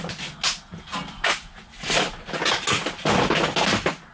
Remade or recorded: recorded